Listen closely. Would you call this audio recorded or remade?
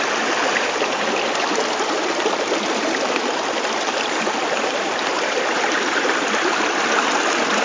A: remade